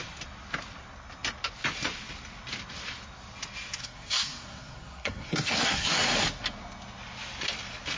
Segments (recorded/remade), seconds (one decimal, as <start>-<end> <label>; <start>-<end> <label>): 0.0-3.8 recorded; 3.8-5.9 remade; 5.9-8.0 recorded